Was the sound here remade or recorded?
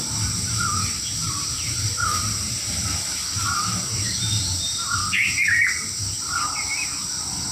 remade